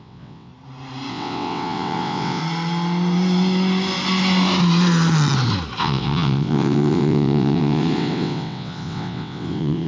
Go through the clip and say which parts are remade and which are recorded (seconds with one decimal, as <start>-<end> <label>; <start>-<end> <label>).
0.0-0.5 remade; 0.5-1.1 recorded; 1.1-2.4 remade; 2.4-5.8 recorded; 5.8-9.9 remade